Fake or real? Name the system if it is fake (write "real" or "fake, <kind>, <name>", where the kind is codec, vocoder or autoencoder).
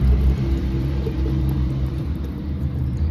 fake, vocoder, BigVGAN v2